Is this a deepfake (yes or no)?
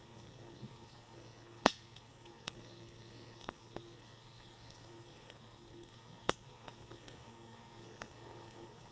yes